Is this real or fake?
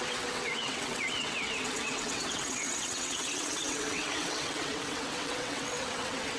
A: fake